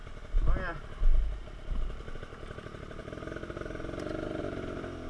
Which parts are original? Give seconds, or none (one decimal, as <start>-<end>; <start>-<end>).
3.0-4.4